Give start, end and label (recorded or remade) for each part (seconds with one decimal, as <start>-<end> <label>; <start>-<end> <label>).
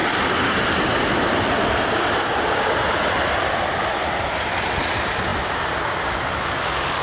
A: 0.0-7.0 recorded